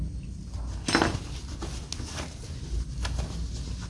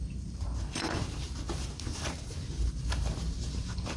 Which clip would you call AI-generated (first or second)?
second